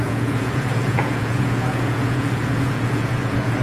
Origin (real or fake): fake